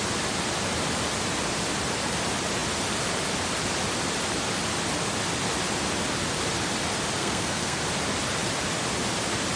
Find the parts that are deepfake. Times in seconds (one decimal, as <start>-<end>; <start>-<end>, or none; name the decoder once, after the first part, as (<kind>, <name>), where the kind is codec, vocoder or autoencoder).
7.2-7.8 (codec, SNAC)